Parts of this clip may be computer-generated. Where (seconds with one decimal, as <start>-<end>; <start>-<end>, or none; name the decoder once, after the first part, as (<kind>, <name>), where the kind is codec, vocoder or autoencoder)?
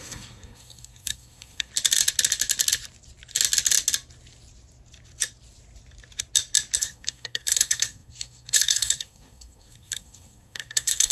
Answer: 0.0-1.7 (codec, SNAC); 6.8-11.1